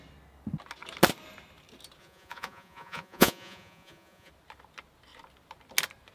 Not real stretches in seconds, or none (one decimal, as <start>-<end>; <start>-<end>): 2.0-4.3